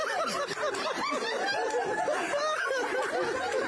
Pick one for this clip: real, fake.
real